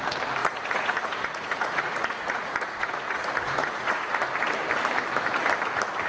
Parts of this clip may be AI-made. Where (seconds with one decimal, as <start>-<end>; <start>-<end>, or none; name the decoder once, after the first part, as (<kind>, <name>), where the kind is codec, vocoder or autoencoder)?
0.4-4.1 (vocoder, Vocos)